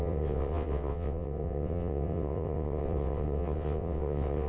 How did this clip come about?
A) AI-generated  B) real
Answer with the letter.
A